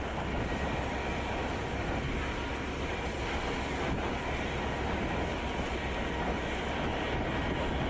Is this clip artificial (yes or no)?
no